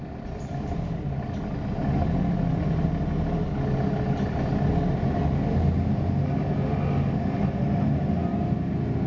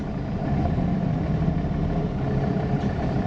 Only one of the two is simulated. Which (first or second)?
second